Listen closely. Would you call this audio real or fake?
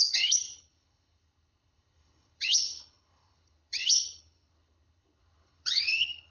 fake